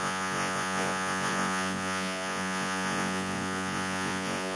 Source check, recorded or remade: remade